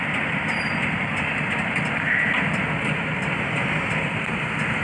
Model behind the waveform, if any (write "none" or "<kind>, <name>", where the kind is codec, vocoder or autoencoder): none